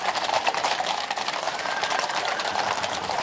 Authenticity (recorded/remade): remade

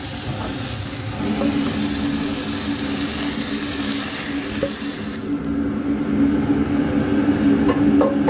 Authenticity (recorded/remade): recorded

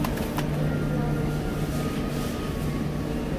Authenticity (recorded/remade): recorded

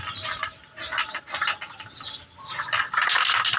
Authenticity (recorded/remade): recorded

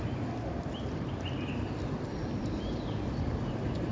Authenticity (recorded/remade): remade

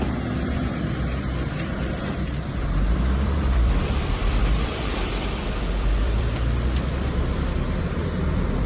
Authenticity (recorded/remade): remade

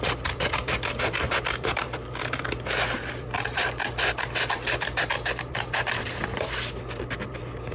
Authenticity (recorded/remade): remade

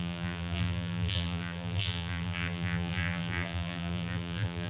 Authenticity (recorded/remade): remade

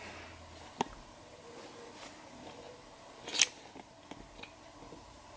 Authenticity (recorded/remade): recorded